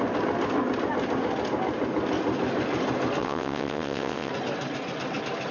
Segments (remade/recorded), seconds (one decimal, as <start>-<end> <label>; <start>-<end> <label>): 0.0-3.2 recorded; 3.2-4.3 remade; 4.3-5.5 recorded